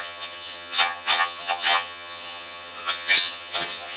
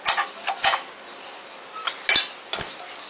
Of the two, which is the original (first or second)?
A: second